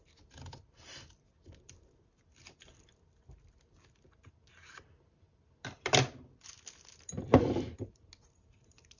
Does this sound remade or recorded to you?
recorded